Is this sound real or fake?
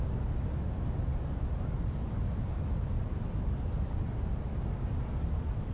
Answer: real